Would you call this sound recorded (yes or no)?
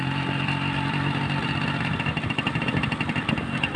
yes